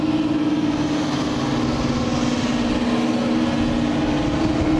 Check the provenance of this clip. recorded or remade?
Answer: recorded